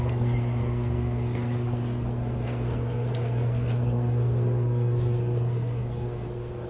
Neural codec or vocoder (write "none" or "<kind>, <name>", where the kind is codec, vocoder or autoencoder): codec, SNAC